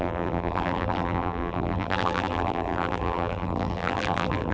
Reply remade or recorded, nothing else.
remade